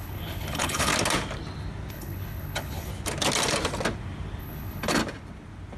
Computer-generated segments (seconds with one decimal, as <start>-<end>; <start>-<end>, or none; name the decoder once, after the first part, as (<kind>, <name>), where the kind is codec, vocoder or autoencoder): 0.0-0.9 (codec, HILCodec); 1.9-2.9; 4.4-5.0